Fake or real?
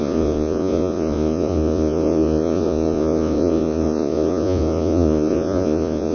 fake